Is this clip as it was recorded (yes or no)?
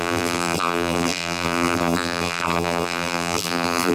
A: no